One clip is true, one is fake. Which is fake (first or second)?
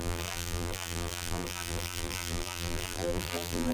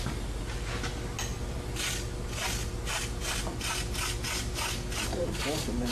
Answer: first